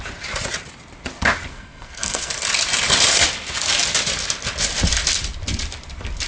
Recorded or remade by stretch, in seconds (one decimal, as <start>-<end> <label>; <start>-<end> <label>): 0.0-1.5 recorded; 1.5-2.3 remade; 2.3-6.3 recorded